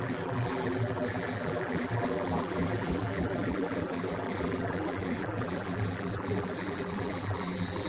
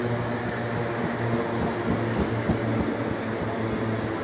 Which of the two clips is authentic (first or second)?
second